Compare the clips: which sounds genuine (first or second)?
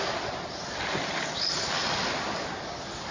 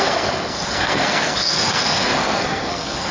first